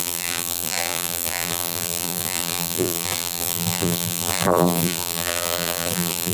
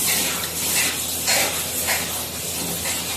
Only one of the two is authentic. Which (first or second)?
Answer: second